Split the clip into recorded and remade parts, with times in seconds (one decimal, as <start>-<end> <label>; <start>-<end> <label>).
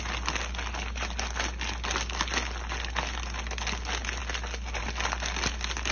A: 0.0-5.9 recorded